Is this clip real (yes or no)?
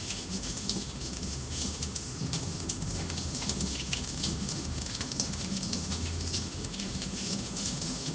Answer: no